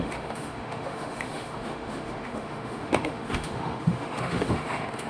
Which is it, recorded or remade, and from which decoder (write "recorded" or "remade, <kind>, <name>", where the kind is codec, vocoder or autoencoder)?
remade, autoencoder, DAC-VAE